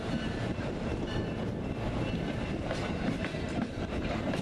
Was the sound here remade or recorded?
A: remade